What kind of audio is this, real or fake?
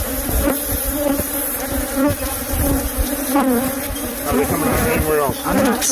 fake